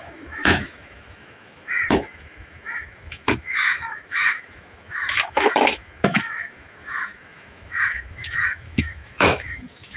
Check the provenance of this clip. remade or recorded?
remade